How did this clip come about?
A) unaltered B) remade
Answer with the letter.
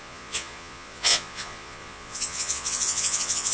B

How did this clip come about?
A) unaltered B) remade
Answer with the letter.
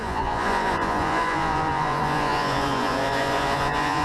B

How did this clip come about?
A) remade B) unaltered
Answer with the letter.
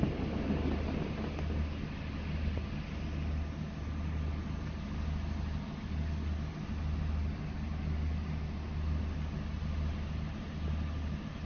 B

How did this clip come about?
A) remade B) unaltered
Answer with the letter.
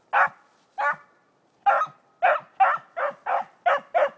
B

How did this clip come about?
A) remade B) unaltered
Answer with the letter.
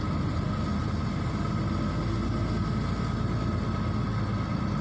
B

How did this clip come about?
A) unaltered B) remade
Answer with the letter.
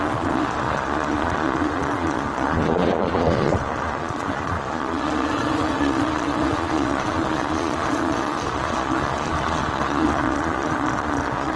B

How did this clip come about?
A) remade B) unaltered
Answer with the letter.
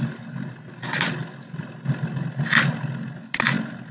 B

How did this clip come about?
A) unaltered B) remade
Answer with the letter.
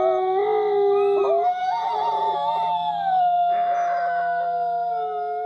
A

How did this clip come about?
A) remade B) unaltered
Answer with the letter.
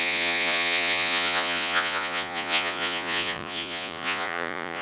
A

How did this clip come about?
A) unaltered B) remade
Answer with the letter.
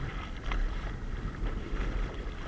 A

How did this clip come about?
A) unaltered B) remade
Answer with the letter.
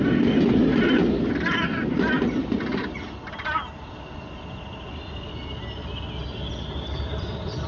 A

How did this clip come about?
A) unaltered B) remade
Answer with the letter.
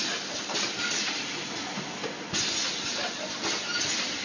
A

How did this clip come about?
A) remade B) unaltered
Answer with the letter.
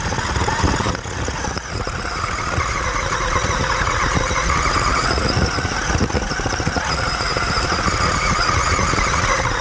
A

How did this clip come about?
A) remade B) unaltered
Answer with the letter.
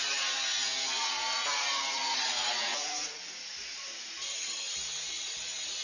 A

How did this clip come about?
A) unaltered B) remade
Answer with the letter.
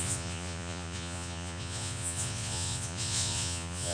B